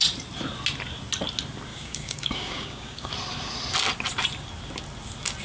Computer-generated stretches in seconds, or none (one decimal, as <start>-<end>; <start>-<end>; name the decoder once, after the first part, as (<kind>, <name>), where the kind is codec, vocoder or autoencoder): 1.7-3.1 (codec, DAC)